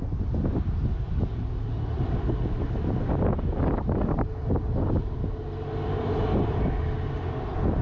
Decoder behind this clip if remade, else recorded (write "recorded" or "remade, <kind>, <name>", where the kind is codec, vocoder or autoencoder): recorded